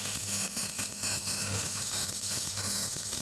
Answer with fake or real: fake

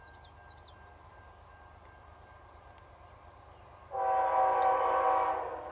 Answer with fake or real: real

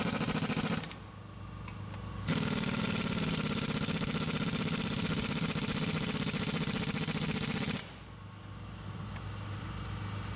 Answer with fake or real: real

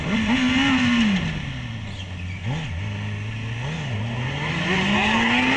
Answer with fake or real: real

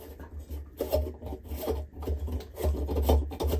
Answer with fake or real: real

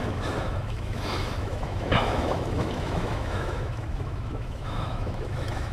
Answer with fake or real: fake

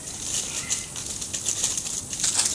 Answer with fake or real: real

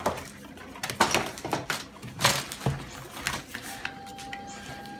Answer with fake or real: real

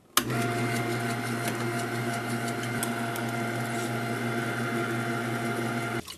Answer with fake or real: real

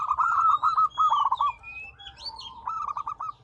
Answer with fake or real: real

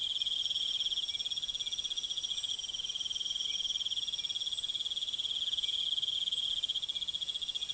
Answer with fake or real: real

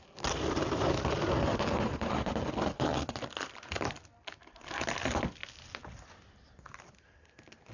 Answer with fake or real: real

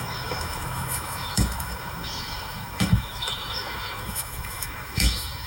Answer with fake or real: fake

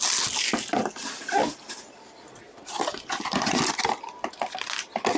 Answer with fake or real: real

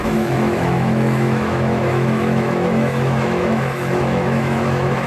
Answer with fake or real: fake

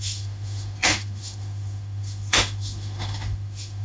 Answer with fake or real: fake